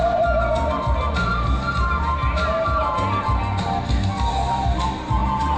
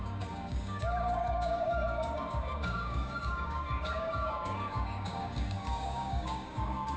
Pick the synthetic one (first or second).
second